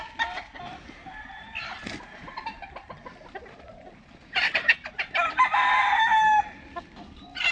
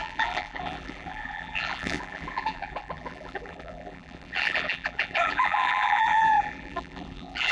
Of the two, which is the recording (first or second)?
first